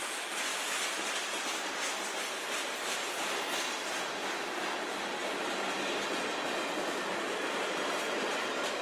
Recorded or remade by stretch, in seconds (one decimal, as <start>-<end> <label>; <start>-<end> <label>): 0.0-8.8 recorded